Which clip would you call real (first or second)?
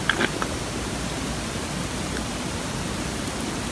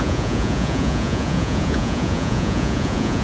first